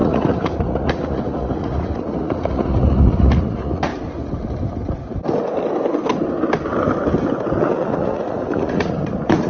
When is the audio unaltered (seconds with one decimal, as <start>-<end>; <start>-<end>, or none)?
3.9-7.6